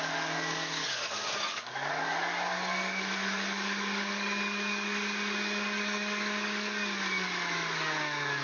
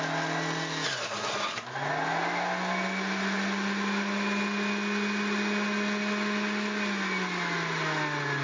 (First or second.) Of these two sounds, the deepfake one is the first